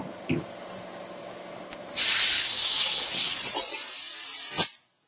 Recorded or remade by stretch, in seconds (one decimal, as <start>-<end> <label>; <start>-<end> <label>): 0.0-2.4 recorded; 2.4-3.3 remade; 3.3-5.1 recorded